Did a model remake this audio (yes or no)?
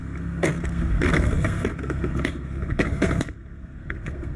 yes